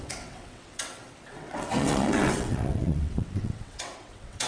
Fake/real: fake